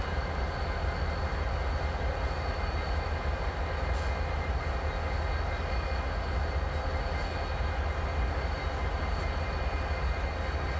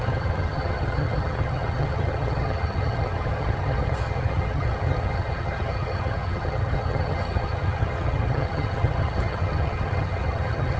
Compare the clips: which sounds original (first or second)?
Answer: first